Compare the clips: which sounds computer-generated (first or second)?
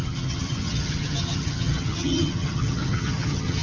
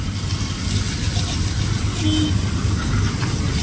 first